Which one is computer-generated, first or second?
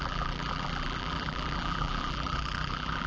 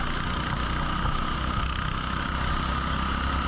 first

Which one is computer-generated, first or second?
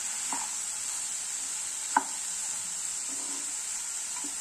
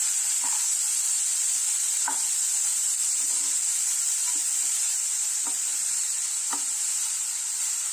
second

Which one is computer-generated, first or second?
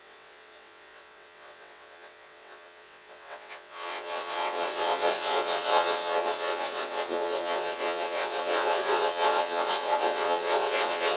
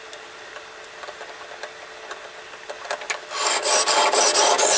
first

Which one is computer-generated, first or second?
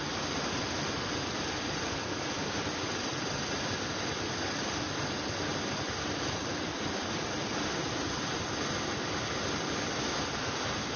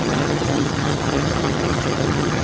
second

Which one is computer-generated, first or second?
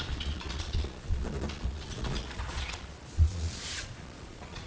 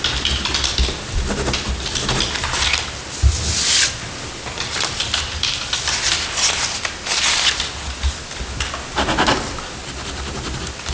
first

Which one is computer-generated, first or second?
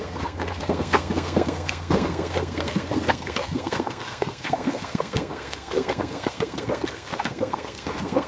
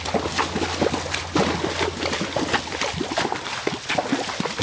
first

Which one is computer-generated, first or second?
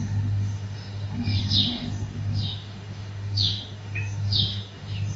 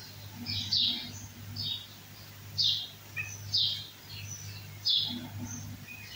first